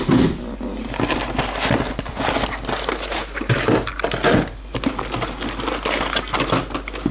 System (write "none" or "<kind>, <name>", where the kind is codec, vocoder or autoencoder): none